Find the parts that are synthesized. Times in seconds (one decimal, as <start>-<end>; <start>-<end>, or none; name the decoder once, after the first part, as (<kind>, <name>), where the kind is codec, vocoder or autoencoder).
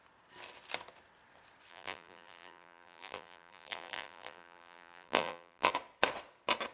1.7-5.7 (vocoder, BigVGAN v2)